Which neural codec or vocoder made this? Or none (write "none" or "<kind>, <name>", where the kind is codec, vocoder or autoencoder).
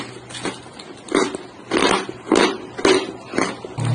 none